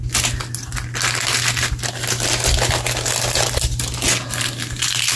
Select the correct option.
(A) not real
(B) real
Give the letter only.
B